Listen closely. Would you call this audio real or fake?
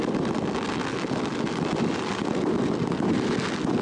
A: real